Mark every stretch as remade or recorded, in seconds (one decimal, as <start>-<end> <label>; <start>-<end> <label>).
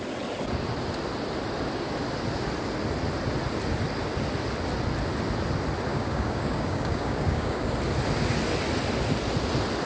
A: 0.0-5.9 recorded; 5.9-7.7 remade; 7.7-9.9 recorded